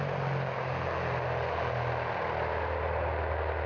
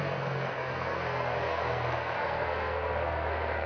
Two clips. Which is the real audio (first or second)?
first